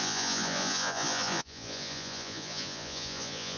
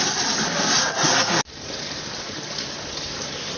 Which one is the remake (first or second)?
first